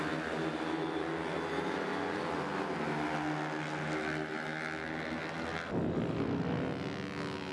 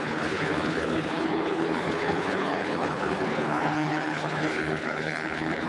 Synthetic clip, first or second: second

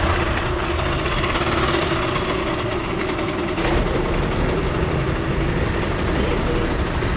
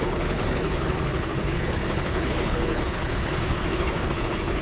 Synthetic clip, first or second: second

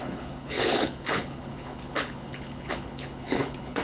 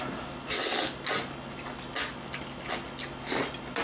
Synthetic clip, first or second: first